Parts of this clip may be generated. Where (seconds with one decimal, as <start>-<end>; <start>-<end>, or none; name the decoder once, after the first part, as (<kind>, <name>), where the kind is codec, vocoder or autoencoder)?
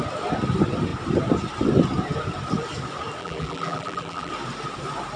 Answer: 3.2-4.3 (vocoder, BigVGAN v2)